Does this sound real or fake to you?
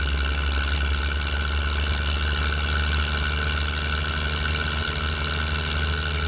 real